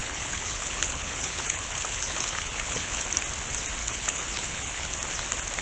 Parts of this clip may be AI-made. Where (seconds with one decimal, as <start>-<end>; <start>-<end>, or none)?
0.0-3.1; 3.8-4.9